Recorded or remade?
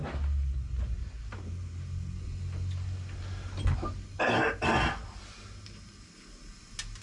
recorded